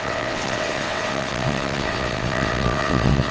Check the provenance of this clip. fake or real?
fake